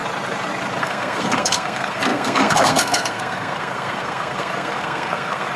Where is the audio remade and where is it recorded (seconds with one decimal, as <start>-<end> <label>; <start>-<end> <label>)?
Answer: 0.0-0.8 recorded; 0.8-5.6 remade